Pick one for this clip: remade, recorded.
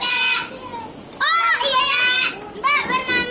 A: recorded